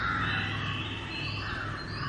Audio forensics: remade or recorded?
recorded